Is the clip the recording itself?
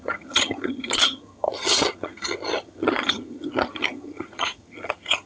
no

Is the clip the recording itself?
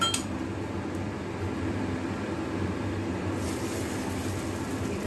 yes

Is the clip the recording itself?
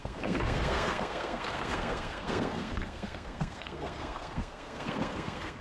no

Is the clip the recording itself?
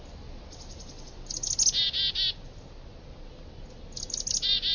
yes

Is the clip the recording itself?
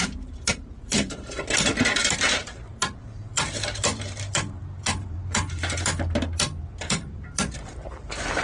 no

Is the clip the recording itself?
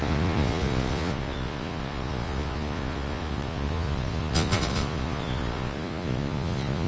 no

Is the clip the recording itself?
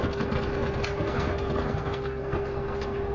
no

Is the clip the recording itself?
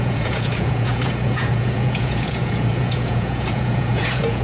no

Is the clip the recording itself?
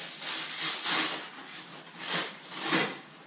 yes